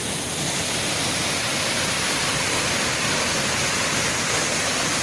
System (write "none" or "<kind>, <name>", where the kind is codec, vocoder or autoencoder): none